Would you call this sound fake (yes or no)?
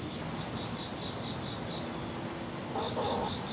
no